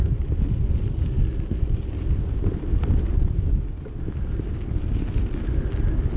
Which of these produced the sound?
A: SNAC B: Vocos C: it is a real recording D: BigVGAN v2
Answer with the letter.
C